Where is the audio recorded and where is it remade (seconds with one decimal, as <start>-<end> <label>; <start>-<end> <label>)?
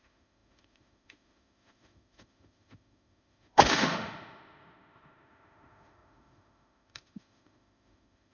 0.0-8.3 remade